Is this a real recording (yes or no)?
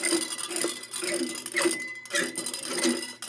yes